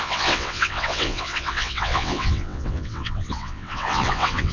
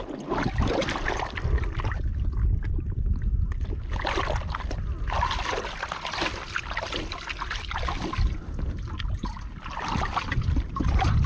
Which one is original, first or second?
second